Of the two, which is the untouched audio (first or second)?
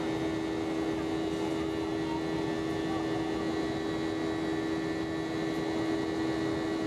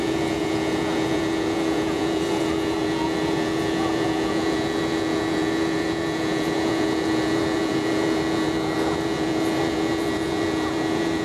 first